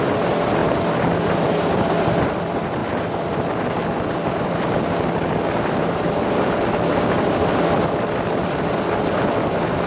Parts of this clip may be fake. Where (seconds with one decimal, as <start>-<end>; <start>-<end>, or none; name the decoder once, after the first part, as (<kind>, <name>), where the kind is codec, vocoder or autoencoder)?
none